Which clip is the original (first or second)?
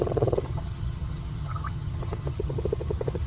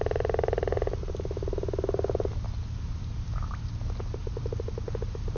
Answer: second